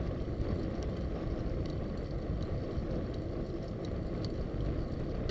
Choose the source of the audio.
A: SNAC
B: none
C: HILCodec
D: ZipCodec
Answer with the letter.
B